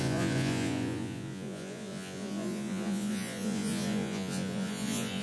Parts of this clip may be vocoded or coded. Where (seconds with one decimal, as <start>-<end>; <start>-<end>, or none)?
0.0-5.2